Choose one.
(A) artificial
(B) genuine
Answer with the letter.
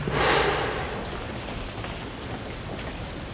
B